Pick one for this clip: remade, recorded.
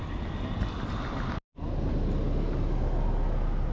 recorded